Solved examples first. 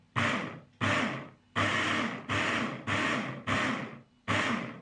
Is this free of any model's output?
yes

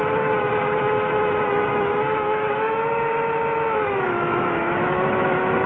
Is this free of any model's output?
no